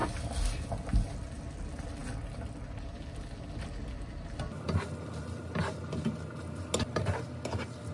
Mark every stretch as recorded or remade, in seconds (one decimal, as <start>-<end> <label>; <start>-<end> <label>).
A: 0.0-7.9 recorded